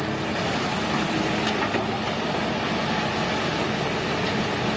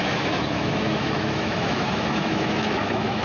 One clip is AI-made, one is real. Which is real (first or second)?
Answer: first